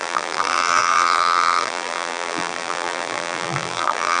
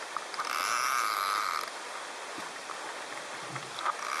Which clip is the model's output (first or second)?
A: first